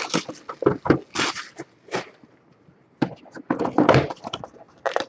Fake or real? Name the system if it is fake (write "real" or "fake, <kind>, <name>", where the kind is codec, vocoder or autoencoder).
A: real